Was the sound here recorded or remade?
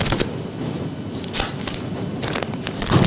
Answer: recorded